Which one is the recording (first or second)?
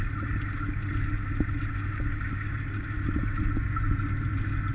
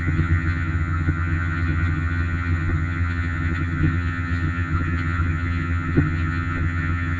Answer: first